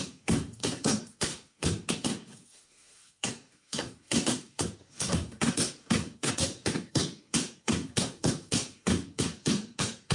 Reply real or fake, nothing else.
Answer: fake